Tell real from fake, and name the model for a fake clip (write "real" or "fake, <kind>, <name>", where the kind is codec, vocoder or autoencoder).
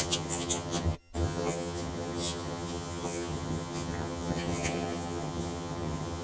fake, vocoder, HiFi-GAN